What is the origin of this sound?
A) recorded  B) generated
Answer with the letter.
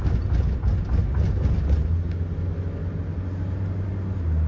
A